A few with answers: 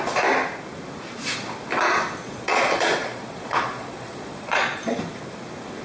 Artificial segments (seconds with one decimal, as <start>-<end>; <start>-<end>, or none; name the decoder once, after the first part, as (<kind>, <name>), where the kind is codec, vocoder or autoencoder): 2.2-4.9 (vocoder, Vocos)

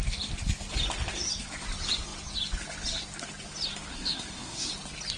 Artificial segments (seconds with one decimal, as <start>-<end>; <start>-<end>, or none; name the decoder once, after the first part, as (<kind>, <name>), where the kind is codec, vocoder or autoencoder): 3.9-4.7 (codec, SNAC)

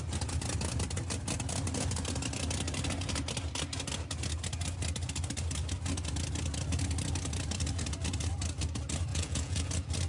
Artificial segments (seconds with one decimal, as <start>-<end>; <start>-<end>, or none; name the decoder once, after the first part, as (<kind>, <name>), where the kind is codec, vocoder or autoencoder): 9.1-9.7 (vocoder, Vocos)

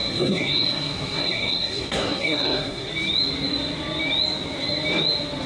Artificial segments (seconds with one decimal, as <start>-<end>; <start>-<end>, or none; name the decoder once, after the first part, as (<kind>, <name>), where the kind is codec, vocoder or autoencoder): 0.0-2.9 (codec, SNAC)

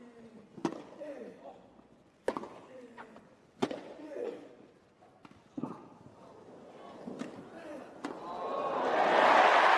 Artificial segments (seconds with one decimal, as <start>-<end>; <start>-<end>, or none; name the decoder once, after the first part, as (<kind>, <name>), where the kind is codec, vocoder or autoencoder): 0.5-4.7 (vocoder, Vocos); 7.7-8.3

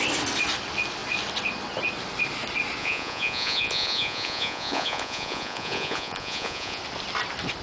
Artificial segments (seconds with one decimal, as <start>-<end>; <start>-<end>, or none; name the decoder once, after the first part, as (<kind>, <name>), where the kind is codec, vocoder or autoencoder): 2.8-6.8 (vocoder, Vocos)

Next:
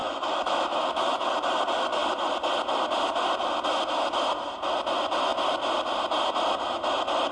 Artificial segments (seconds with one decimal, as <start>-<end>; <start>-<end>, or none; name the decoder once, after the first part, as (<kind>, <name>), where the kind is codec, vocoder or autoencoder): 0.0-1.3 (autoencoder, DAC-VAE)

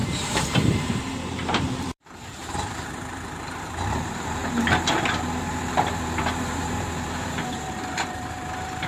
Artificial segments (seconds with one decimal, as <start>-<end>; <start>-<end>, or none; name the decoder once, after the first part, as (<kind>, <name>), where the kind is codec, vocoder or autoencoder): 0.0-4.4 (vocoder, BigVGAN v2); 5.4-8.9